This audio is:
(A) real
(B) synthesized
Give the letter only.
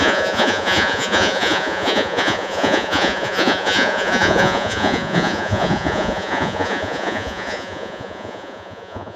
B